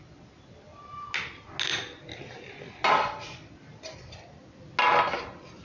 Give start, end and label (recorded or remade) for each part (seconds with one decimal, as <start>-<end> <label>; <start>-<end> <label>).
0.0-5.6 recorded